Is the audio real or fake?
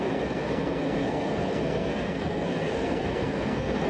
fake